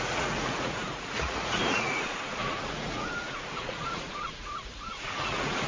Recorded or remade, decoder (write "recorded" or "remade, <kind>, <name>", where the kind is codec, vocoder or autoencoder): remade, vocoder, Vocos